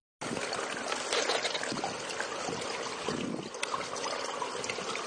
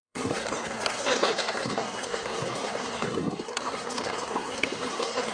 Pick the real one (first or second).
first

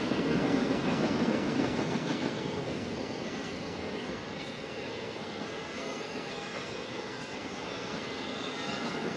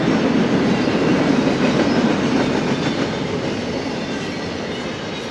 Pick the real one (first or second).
second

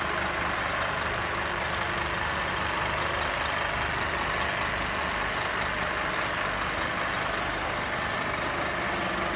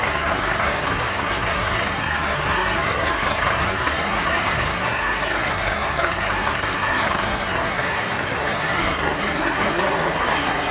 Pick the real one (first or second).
first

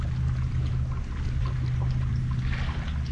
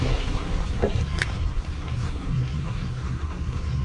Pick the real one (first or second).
first